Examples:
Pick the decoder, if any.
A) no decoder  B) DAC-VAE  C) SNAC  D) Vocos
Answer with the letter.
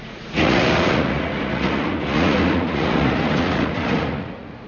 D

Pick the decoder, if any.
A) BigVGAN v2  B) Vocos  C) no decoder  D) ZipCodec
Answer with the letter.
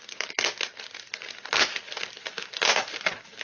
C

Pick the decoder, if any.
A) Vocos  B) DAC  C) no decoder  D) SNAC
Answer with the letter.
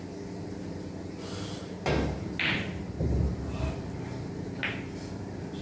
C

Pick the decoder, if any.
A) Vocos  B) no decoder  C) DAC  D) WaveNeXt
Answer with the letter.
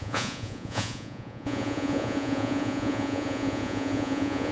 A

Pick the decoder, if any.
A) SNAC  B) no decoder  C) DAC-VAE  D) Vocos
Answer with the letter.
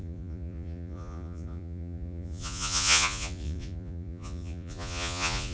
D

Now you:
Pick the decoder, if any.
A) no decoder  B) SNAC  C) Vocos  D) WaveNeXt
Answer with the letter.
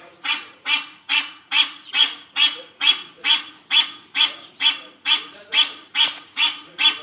C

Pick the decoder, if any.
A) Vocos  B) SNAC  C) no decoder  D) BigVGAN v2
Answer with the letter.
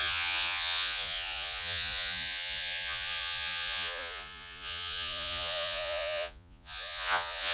A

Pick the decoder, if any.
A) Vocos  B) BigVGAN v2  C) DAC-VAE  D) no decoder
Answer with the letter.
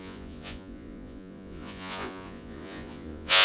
A